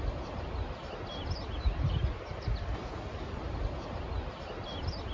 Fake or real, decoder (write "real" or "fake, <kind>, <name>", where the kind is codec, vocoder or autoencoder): real